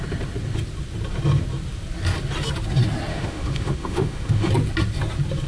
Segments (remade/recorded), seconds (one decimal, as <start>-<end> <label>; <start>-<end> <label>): 0.0-3.1 recorded; 3.1-4.5 remade; 4.5-5.5 recorded